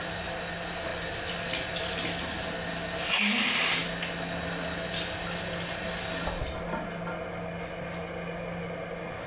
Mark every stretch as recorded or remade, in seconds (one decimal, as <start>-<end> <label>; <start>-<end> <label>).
0.0-9.3 recorded